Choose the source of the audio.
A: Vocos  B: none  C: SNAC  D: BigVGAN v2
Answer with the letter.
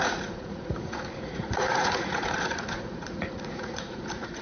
A